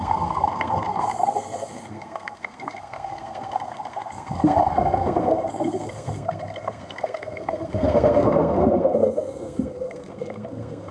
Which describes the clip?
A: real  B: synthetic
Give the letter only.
B